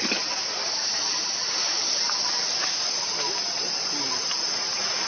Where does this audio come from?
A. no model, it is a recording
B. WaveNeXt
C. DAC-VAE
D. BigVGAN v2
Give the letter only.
A